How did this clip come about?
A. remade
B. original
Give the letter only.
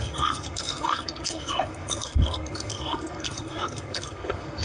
A